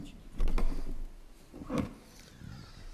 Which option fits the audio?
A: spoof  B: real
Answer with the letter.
B